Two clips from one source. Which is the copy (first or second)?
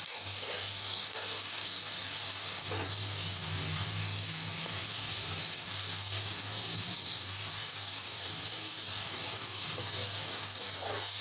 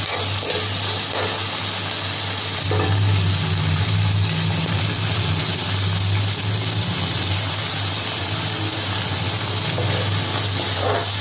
first